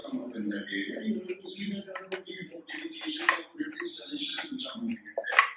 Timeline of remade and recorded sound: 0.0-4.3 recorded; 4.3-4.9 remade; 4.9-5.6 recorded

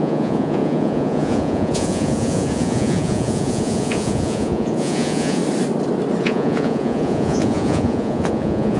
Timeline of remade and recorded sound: 0.0-5.4 remade; 5.4-6.2 recorded; 6.2-8.8 remade